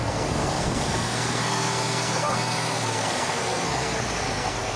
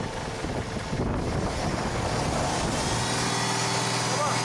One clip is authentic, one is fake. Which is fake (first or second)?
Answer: first